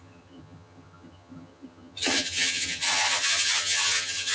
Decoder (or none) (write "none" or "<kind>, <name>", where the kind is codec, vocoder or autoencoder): vocoder, HiFi-GAN